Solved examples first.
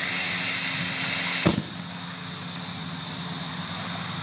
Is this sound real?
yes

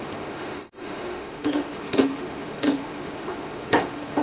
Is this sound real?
no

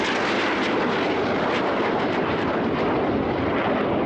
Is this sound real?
yes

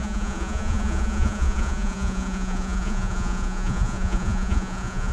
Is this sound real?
no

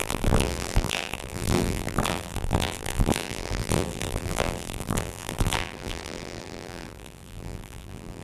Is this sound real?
no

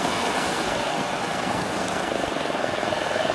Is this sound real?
no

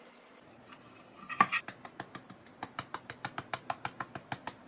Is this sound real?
yes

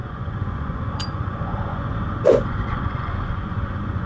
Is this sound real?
no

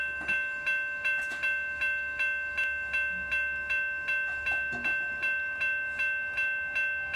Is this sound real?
yes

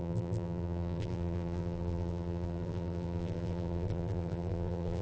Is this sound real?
no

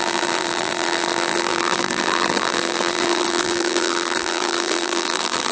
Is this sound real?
no